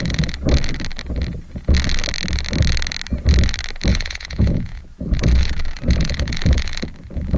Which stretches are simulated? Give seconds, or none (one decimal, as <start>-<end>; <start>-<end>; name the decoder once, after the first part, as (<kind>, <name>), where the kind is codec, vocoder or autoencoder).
3.9-4.8 (vocoder, Vocos)